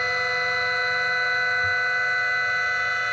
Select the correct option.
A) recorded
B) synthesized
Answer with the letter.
A